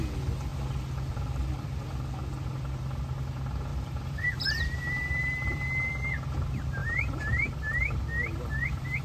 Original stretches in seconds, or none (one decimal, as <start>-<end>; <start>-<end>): 0.0-3.7; 5.9-6.8; 7.5-9.0